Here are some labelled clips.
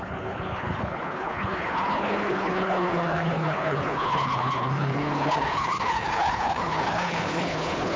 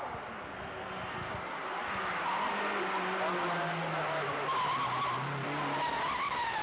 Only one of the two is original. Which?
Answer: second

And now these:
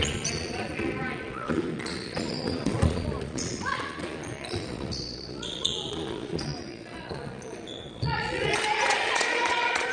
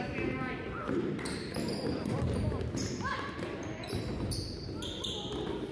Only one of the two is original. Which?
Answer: second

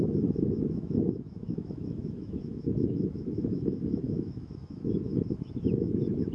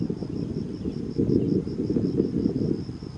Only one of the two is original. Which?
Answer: second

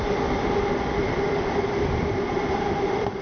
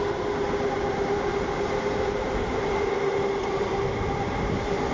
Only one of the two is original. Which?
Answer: second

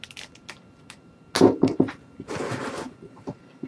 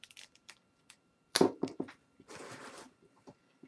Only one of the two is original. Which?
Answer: first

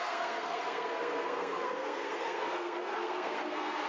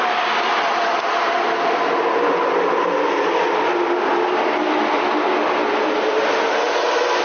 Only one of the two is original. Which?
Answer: second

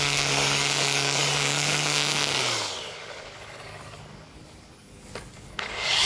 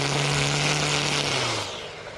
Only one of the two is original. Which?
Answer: second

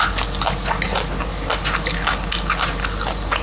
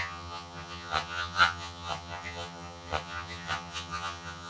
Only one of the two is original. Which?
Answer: first